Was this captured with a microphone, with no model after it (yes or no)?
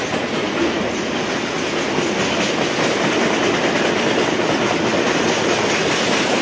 yes